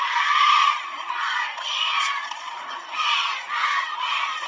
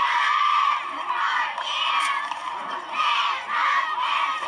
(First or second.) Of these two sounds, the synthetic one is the first